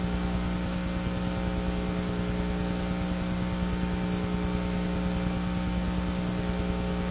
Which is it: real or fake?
real